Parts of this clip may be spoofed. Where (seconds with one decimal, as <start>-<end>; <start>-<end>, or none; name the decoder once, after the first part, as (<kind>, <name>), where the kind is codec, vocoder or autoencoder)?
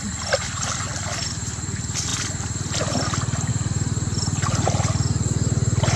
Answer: none